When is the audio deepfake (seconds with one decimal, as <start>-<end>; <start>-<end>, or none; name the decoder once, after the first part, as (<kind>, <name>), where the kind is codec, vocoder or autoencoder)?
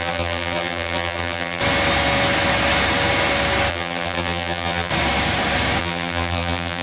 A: 0.0-1.6 (vocoder, BigVGAN v2); 3.7-4.9; 5.8-6.8